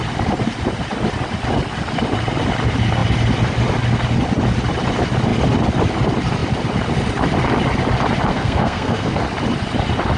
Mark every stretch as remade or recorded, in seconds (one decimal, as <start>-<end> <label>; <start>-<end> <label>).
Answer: 0.0-8.3 recorded; 8.3-9.2 remade; 9.2-10.2 recorded